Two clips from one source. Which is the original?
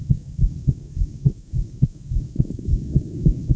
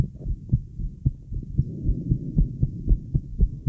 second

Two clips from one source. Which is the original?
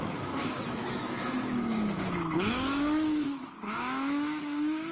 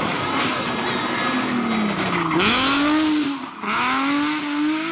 second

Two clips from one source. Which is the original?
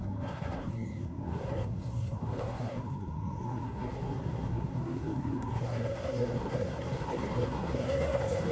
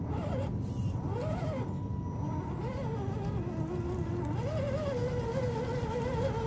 second